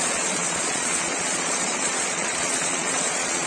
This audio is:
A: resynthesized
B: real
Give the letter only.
A